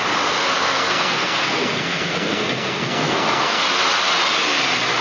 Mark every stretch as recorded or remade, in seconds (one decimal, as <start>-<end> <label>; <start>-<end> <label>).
0.0-0.6 recorded; 0.6-3.6 remade; 3.6-5.0 recorded